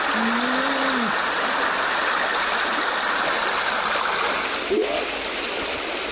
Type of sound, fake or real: real